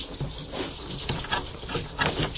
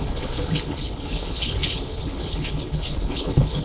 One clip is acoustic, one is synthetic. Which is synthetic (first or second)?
second